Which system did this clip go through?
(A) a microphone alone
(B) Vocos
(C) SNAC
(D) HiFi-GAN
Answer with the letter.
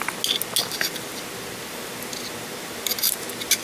A